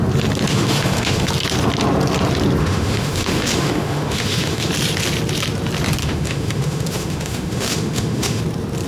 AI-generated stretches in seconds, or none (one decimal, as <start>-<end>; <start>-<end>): 0.5-1.3; 2.6-4.7; 6.0-8.4